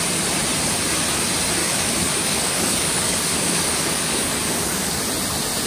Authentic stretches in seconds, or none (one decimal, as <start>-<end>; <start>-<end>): 0.0-1.6; 5.0-5.7